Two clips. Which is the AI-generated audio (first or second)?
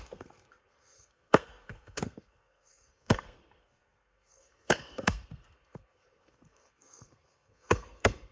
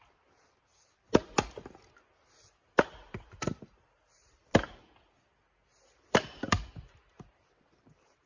first